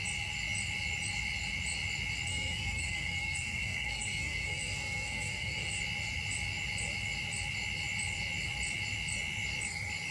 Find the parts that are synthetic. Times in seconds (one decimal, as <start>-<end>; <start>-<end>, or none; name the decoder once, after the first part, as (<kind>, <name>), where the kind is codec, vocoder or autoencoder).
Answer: 2.3-5.8 (codec, SNAC)